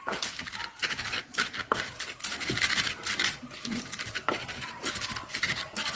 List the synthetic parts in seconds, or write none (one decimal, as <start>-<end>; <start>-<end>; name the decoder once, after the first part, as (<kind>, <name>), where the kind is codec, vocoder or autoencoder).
1.2-4.8 (vocoder, BigVGAN v2)